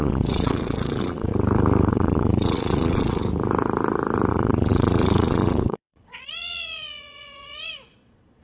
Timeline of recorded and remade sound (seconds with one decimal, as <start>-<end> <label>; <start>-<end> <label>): 0.0-1.3 remade; 1.3-1.9 recorded; 1.9-3.2 remade; 3.2-4.3 recorded; 4.3-8.4 remade